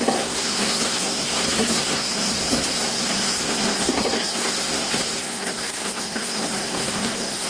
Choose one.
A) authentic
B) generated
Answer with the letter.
B